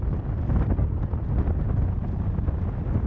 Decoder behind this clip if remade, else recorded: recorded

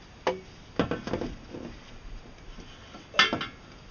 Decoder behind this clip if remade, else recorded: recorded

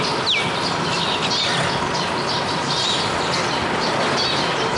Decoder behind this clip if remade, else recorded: recorded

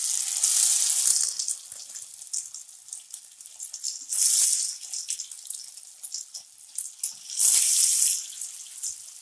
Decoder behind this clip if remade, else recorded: recorded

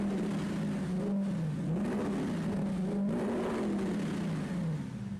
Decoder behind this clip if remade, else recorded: recorded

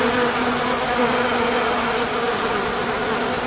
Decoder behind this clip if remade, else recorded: recorded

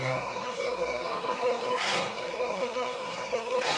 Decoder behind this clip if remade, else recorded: remade, codec, SNAC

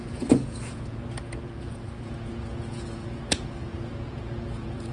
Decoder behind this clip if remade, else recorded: remade, vocoder, Vocos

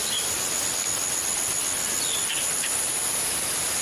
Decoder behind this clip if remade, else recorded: recorded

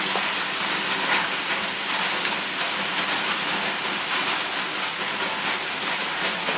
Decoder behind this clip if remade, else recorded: recorded